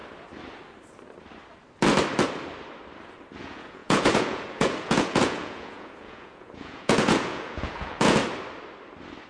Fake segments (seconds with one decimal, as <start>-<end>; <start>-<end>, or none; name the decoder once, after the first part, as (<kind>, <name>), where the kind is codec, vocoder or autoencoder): 3.4-8.2 (vocoder, Vocos)